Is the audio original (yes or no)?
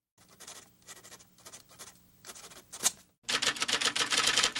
yes